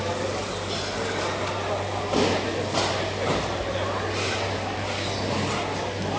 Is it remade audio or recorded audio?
recorded